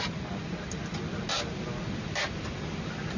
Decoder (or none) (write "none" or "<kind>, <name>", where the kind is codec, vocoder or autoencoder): none